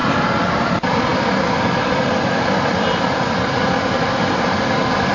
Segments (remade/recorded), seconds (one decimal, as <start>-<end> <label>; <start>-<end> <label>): 0.0-0.7 remade; 0.7-5.1 recorded